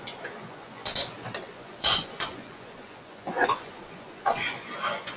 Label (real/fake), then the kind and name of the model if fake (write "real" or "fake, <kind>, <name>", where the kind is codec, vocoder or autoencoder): fake, vocoder, Vocos